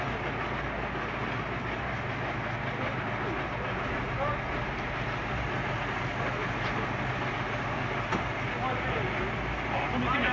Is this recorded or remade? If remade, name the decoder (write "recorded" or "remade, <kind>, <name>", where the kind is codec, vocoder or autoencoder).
recorded